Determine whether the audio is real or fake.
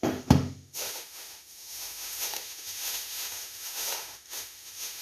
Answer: fake